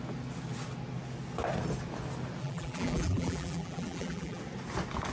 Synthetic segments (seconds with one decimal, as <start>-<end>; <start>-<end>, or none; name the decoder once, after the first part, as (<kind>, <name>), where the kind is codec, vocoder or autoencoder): 2.4-4.4 (vocoder, BigVGAN v2)